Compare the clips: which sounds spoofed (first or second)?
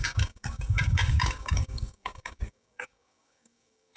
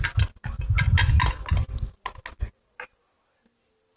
first